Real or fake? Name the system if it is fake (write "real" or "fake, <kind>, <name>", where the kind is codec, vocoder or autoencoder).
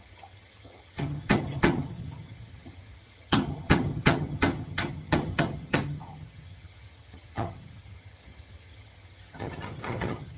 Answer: fake, vocoder, HiFi-GAN